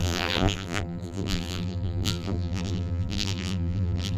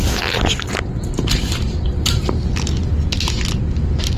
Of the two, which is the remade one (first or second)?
first